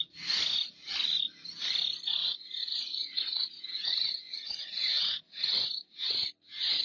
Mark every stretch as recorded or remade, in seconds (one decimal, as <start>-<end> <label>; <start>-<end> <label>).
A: 0.0-2.2 recorded; 2.2-6.3 remade; 6.3-6.8 recorded